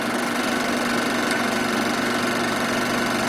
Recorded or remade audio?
recorded